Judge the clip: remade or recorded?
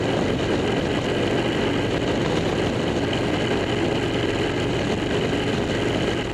recorded